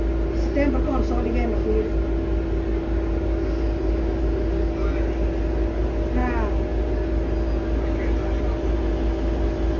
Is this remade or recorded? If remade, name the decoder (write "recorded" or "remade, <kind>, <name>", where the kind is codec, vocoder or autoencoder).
recorded